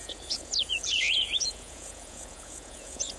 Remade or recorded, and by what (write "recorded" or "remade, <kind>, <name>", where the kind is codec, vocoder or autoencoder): remade, vocoder, Vocos